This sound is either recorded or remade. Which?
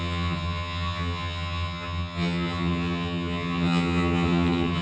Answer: remade